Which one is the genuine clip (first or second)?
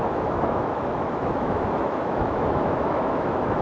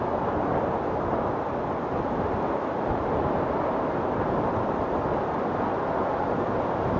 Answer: second